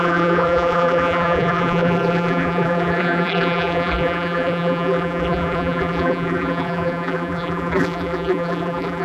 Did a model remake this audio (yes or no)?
yes